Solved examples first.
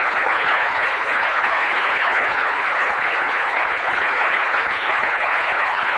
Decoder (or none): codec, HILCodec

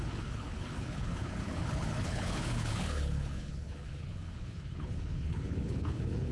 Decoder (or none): codec, HILCodec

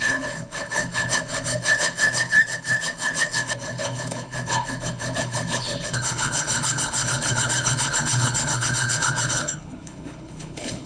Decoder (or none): codec, HILCodec